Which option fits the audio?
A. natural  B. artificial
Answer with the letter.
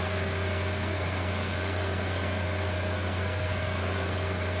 B